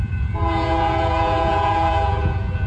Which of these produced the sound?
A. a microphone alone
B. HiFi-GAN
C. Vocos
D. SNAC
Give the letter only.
C